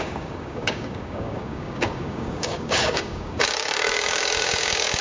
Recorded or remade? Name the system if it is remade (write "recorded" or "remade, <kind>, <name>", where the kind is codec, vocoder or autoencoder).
remade, codec, DAC